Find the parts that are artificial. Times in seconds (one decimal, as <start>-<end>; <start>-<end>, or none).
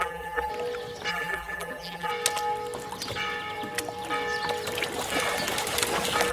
0.0-0.5; 1.1-2.1